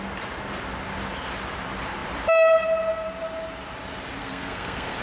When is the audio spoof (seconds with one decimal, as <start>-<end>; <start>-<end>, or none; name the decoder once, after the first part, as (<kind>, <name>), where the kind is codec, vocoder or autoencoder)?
4.2-5.0 (codec, SNAC)